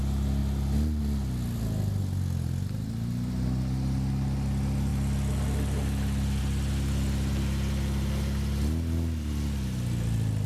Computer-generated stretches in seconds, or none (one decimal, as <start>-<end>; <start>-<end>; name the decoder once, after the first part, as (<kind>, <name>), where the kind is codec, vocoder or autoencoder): none